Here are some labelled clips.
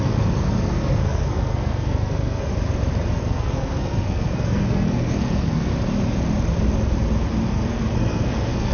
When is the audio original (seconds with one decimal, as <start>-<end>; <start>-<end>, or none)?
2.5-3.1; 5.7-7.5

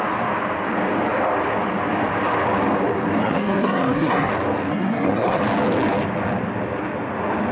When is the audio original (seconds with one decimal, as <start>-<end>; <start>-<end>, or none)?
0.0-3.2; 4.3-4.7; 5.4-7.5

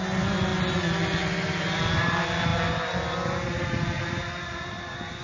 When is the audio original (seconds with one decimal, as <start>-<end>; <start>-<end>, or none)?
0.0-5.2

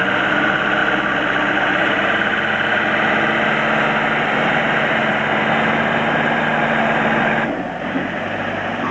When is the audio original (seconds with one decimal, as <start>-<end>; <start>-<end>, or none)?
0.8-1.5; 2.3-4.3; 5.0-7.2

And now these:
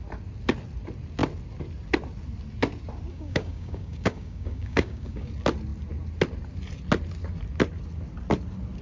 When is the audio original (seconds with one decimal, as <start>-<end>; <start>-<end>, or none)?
0.0-3.1; 5.3-8.8

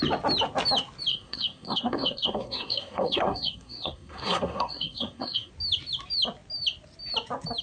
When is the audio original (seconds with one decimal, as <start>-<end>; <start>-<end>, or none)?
0.0-1.1; 5.5-7.6

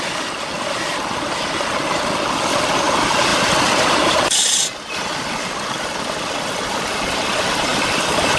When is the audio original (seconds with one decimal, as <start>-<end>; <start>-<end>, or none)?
0.0-3.3; 4.6-7.7

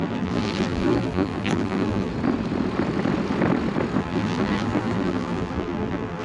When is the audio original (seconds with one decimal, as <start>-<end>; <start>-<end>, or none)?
2.1-4.0